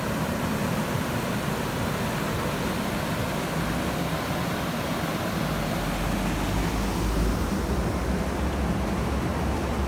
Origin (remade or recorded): recorded